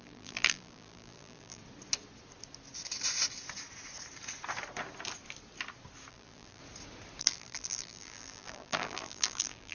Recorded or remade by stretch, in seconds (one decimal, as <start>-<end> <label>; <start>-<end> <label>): 0.0-1.6 remade; 1.6-6.1 recorded; 6.1-6.6 remade; 6.6-7.2 recorded; 7.2-9.7 remade